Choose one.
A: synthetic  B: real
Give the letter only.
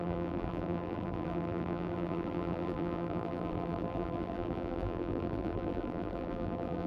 A